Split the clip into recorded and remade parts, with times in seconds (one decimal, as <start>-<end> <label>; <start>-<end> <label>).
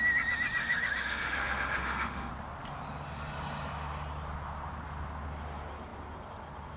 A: 0.0-0.6 recorded; 0.6-2.3 remade; 2.3-6.8 recorded